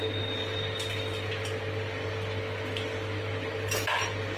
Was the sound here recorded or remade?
recorded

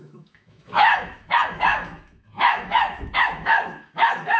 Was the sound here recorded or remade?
remade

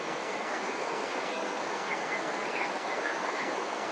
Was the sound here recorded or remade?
remade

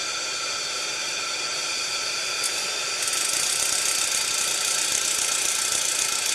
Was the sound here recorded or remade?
recorded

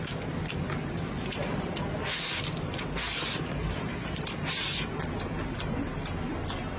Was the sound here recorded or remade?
recorded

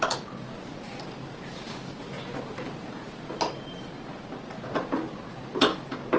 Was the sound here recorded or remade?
recorded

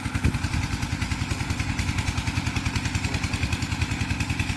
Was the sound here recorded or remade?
recorded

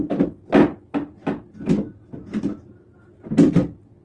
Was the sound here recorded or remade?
recorded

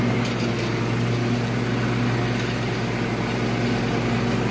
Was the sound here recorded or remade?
recorded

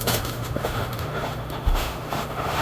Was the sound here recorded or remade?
remade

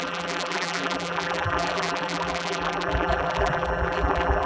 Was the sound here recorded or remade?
remade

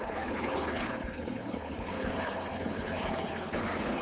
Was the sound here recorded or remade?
remade